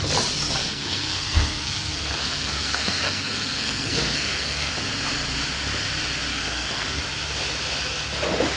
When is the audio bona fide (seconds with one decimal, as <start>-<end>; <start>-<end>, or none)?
0.0-0.6; 4.7-6.3; 7.0-8.6